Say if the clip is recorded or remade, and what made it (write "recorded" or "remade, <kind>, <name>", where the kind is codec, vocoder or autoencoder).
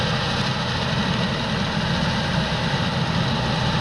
recorded